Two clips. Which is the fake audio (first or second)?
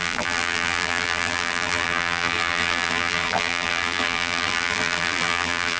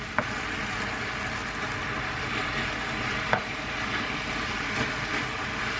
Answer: first